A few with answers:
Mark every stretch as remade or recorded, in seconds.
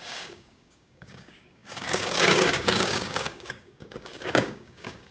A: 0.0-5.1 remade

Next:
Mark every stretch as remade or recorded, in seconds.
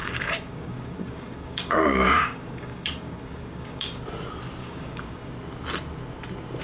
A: 0.0-4.0 remade; 4.0-4.6 recorded; 4.6-5.3 remade; 5.3-6.6 recorded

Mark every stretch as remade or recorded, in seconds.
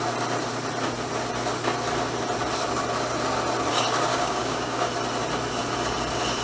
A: 0.0-4.1 recorded; 4.1-4.9 remade; 4.9-6.4 recorded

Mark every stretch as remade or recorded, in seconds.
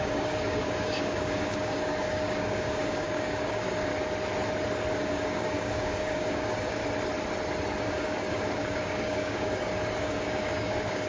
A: 0.0-3.9 remade; 3.9-4.9 recorded; 4.9-6.8 remade; 6.8-7.8 recorded; 7.8-11.1 remade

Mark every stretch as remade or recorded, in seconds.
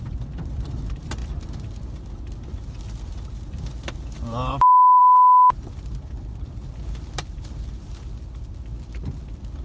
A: 0.0-9.6 recorded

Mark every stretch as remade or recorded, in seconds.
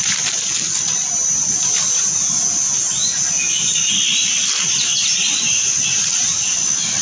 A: 0.0-7.0 recorded